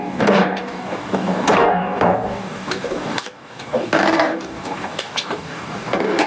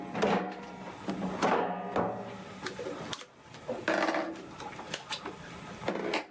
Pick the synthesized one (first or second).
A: first